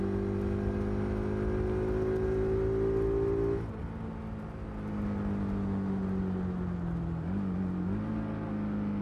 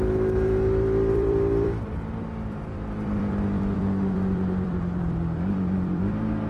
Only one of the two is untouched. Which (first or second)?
first